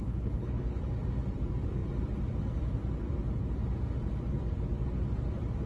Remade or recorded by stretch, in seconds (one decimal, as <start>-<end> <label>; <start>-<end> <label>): 0.0-0.8 remade; 0.8-5.7 recorded